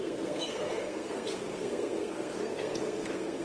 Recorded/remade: remade